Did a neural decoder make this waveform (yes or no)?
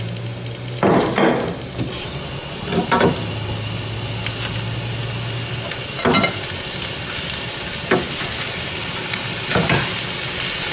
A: no